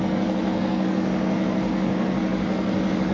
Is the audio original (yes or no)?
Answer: no